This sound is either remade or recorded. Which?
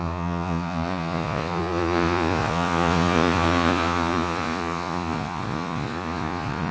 remade